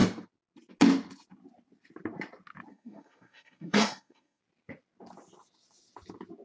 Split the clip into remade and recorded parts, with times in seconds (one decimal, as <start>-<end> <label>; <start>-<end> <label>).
0.0-2.7 recorded; 2.7-4.4 remade; 4.4-6.4 recorded